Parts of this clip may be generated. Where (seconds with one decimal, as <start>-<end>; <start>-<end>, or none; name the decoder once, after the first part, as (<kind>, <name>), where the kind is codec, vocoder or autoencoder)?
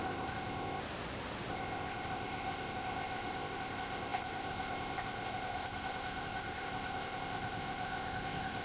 0.0-0.8 (codec, ZipCodec); 1.5-8.6